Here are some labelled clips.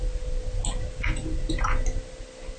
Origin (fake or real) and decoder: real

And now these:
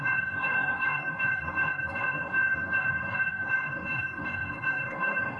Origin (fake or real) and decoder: fake, codec, SNAC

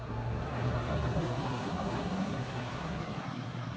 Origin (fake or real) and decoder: fake, codec, SNAC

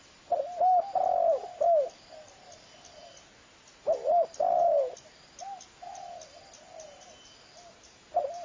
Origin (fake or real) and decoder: real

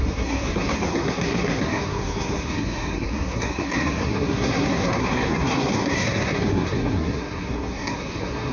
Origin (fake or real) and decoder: fake, codec, SNAC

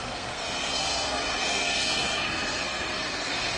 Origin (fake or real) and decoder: fake, codec, SNAC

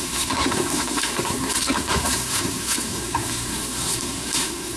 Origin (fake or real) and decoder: fake, codec, SNAC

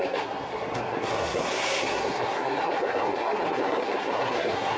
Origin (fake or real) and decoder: fake, codec, SNAC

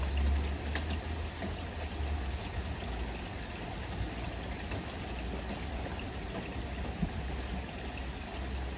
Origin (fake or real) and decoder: real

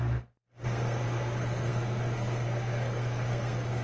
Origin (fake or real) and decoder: fake, codec, SNAC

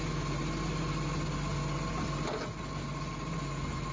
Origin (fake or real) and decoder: real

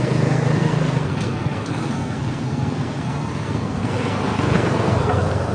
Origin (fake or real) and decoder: fake, codec, SNAC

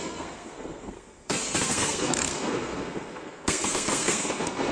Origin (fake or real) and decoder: fake, codec, SNAC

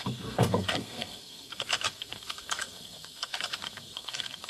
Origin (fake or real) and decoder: fake, codec, SNAC